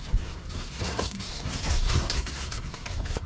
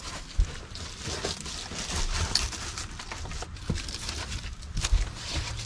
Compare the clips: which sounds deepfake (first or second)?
first